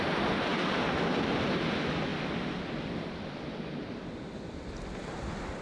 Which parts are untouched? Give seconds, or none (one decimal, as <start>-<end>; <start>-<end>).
0.0-5.6